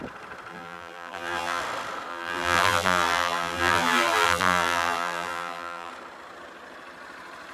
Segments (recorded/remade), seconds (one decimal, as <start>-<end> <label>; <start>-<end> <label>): 0.0-0.5 recorded; 0.5-1.6 remade; 1.6-2.1 recorded; 2.1-5.9 remade; 5.9-7.5 recorded